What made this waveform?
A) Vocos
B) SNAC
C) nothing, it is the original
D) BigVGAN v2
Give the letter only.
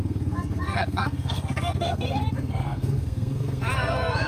B